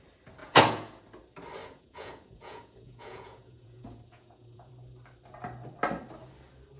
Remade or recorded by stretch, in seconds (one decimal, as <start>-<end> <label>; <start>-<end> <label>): 0.0-0.4 recorded; 0.4-1.0 remade; 1.0-1.6 recorded; 1.6-4.7 remade; 4.7-6.8 recorded